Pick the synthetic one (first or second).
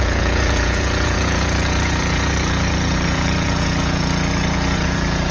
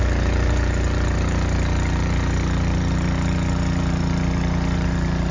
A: first